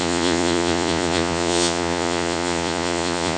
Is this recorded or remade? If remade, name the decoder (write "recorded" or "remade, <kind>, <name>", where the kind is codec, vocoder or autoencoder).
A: remade, vocoder, Vocos